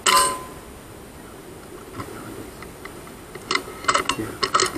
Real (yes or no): yes